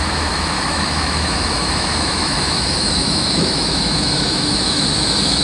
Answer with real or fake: fake